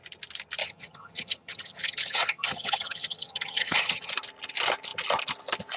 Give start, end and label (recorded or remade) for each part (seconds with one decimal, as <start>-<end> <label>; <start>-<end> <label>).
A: 0.0-0.6 recorded; 0.6-4.1 remade; 4.1-5.8 recorded